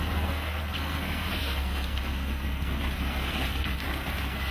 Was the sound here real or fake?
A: fake